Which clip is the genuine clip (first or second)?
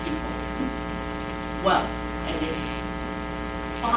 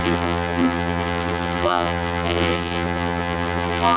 first